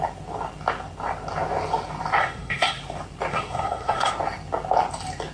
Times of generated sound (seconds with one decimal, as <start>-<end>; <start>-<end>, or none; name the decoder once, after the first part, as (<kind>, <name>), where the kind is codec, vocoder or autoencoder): 2.2-2.8 (codec, SNAC); 3.3-4.1